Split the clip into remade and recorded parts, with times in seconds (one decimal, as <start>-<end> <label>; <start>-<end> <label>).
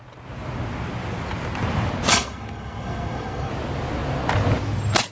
0.0-2.1 recorded; 2.1-3.5 remade; 3.5-5.1 recorded